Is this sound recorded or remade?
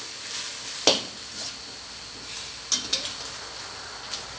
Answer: recorded